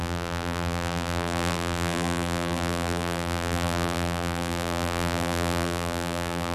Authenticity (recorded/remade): remade